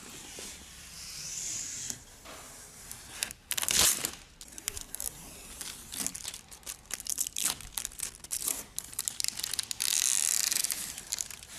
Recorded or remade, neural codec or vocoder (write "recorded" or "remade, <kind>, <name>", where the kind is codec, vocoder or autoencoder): recorded